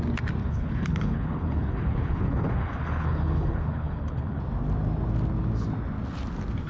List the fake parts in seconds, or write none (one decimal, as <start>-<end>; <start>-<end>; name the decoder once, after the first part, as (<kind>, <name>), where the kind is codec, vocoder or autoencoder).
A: 0.4-4.4 (codec, HILCodec)